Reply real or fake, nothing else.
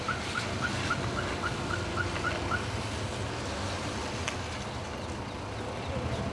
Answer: real